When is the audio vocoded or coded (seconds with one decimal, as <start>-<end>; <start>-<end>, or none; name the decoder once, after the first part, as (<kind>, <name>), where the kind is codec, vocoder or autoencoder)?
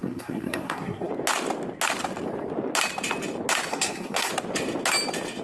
0.0-1.1 (codec, SNAC); 3.7-4.3